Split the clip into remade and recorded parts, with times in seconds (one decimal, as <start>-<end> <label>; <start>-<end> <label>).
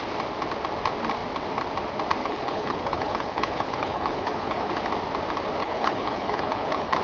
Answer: 0.0-2.2 recorded; 2.2-4.7 remade; 4.7-5.6 recorded; 5.6-7.0 remade